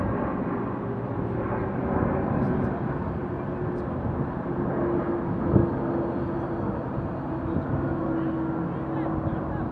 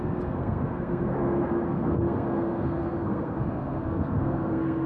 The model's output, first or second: second